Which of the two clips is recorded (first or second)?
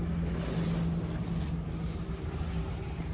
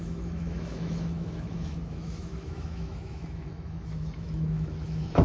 first